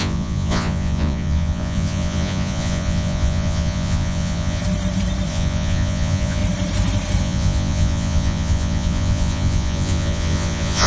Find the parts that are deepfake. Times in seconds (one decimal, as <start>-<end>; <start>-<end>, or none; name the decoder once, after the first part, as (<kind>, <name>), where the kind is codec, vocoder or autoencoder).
0.0-4.6 (vocoder, Vocos); 5.3-6.4; 7.2-10.9